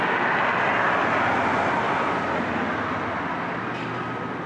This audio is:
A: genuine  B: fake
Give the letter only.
A